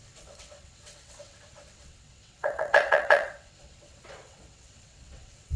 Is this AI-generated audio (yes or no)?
yes